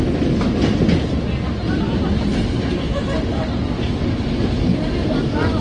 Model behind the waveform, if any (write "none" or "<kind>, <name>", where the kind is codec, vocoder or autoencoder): none